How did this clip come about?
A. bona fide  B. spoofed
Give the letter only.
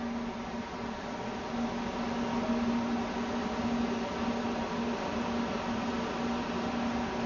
A